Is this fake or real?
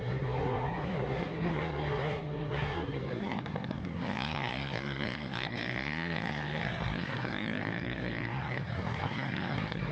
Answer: fake